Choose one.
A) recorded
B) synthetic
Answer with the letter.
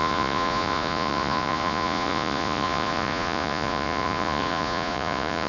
B